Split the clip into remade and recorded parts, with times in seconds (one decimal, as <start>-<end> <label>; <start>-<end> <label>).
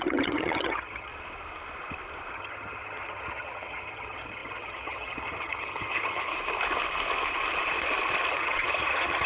0.0-1.1 remade; 1.1-2.3 recorded; 2.3-6.3 remade; 6.3-8.3 recorded; 8.3-9.3 remade